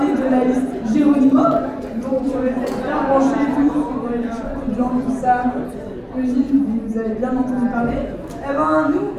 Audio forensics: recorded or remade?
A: remade